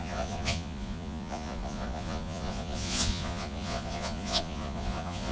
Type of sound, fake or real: fake